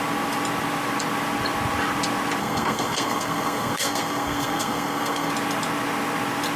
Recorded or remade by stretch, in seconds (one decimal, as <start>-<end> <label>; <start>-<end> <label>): 0.0-2.4 recorded; 2.4-5.3 remade; 5.3-6.6 recorded